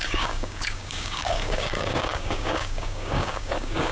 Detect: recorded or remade remade